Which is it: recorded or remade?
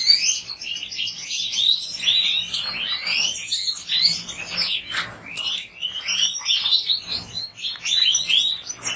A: recorded